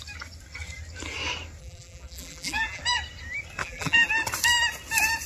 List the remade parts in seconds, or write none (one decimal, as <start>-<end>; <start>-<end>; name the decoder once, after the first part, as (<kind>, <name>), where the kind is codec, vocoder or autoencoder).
1.6-2.8 (vocoder, BigVGAN v2); 3.6-4.1